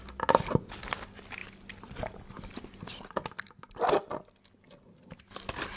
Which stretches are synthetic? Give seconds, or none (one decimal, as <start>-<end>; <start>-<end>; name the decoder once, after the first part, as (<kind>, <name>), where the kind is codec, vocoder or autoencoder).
none